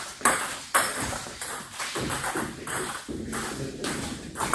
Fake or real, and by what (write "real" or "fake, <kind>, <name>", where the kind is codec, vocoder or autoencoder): real